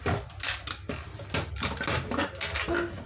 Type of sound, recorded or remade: recorded